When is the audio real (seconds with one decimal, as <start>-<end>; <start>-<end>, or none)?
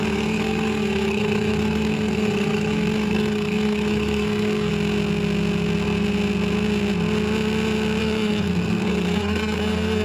4.7-8.0